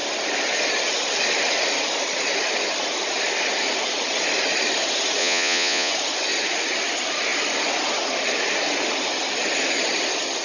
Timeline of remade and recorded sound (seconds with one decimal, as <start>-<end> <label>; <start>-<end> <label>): 0.0-5.2 recorded; 5.2-5.9 remade; 5.9-10.4 recorded